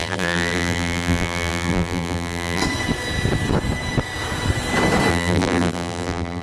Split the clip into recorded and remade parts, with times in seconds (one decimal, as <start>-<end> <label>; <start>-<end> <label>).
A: 0.0-2.6 remade; 2.6-5.1 recorded; 5.1-6.4 remade